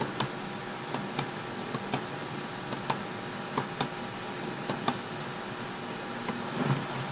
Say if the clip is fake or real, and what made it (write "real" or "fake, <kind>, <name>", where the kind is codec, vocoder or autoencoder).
real